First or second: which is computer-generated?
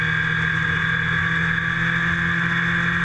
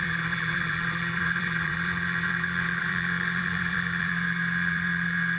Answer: second